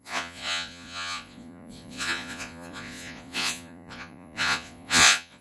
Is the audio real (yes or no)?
no